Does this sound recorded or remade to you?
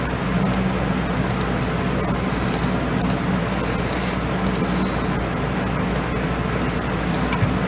recorded